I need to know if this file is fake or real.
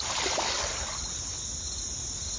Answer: real